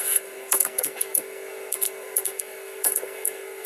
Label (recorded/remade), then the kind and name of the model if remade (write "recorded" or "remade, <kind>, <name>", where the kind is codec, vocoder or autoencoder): remade, codec, SNAC